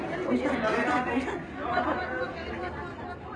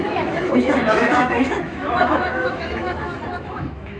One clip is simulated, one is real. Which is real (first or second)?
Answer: first